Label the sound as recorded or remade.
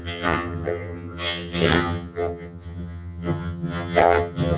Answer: remade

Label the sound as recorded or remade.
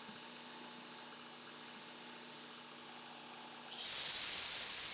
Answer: recorded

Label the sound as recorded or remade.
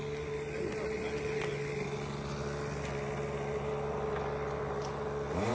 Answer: recorded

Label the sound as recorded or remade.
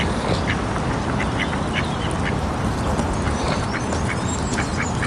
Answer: recorded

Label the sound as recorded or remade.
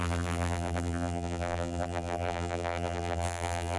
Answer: remade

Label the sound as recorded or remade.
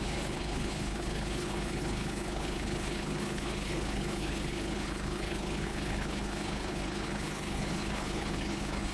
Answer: remade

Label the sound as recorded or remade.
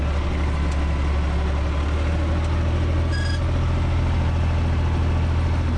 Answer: recorded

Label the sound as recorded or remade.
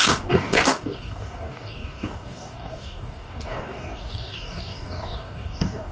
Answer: remade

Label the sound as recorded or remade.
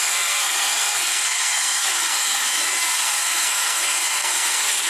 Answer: remade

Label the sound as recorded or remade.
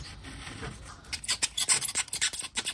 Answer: recorded